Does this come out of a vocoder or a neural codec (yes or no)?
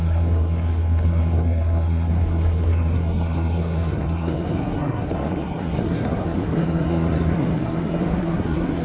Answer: yes